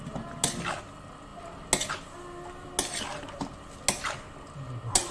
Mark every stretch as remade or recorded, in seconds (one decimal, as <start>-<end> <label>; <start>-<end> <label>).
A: 0.0-5.1 recorded